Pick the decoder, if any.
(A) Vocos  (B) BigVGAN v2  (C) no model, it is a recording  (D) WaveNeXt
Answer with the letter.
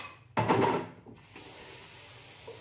C